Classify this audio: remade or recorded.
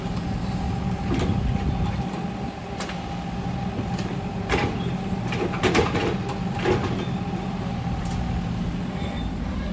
recorded